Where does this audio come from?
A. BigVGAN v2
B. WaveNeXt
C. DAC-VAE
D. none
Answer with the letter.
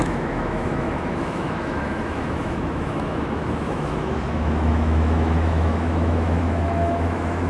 C